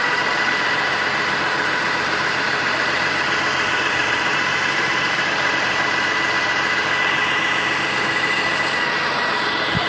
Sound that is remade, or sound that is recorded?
remade